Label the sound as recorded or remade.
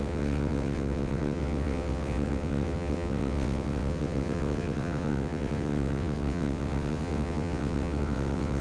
remade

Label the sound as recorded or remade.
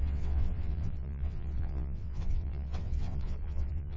remade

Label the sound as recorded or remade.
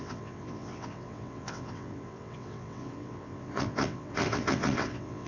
remade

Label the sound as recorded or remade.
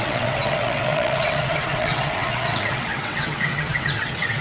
remade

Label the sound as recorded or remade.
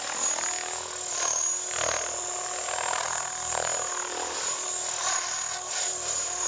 recorded